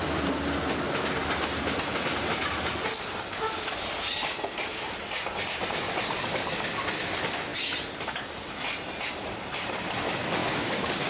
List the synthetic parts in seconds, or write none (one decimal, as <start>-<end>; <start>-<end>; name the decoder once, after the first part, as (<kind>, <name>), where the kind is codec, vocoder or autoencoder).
10.4-11.1 (codec, DAC)